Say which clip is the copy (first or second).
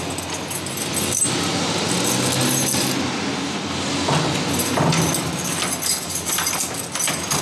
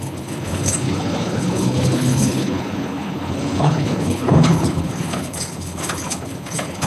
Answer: second